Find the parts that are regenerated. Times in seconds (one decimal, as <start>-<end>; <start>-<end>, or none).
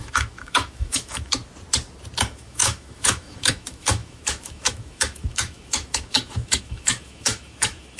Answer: 0.0-1.4; 2.2-8.0